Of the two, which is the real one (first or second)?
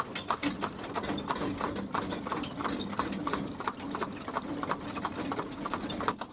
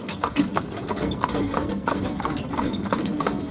first